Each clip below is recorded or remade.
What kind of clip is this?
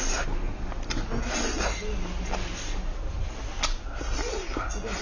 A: recorded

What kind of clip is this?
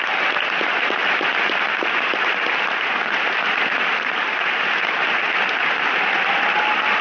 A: recorded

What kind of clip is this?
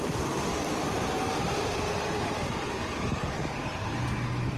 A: remade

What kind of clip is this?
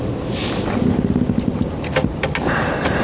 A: recorded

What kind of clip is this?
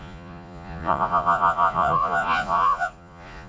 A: remade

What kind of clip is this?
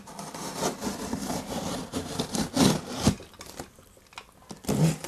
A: recorded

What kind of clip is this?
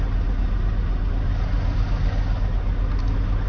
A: recorded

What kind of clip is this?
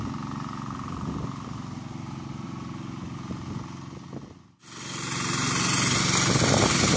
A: recorded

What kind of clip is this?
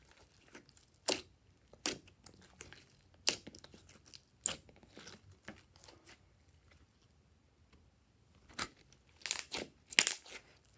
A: recorded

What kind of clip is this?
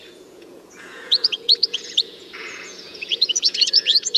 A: remade